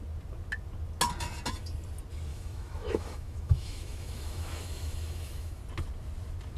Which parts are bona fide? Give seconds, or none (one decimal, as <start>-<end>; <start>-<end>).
0.0-2.3; 5.6-6.6